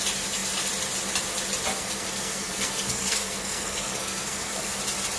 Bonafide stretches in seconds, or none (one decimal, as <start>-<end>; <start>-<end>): 0.0-1.7; 4.8-5.2